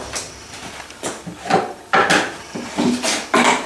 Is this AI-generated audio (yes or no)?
no